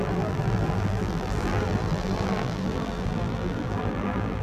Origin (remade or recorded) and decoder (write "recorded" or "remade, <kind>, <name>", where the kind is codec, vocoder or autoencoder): remade, vocoder, BigVGAN v2